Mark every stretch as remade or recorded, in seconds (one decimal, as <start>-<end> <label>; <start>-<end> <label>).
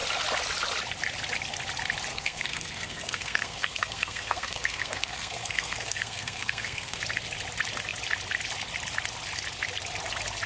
0.0-2.1 recorded; 2.1-7.0 remade; 7.0-10.5 recorded